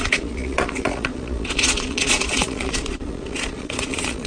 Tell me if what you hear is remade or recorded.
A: remade